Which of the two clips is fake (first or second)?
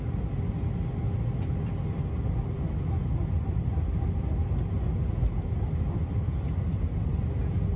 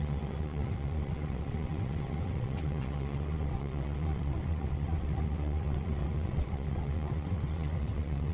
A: second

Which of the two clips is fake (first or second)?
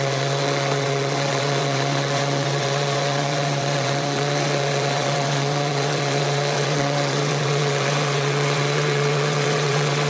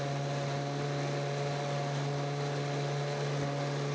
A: first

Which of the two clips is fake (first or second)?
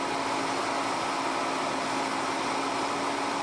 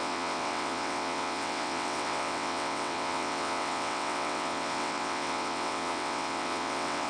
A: second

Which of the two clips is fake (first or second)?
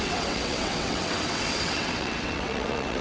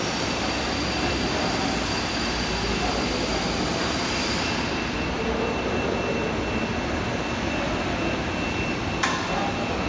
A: first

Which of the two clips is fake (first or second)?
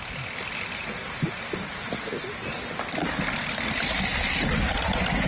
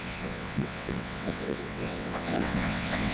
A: second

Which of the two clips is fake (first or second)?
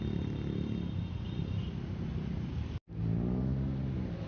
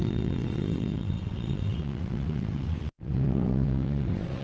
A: second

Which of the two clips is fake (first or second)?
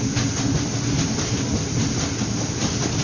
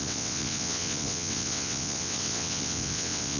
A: second